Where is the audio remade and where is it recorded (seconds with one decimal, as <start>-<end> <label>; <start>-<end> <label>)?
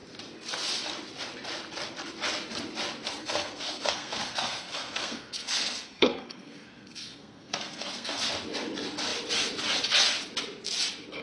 0.0-3.2 recorded; 3.2-8.3 remade; 8.3-11.2 recorded